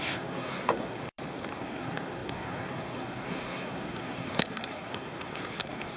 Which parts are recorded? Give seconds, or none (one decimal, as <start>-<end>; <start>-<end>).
1.0-1.6